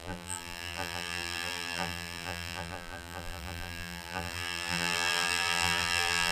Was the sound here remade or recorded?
remade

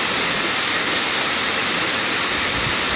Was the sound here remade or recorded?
recorded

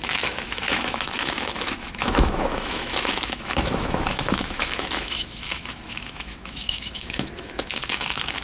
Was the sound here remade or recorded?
remade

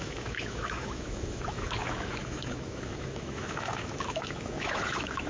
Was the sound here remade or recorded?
remade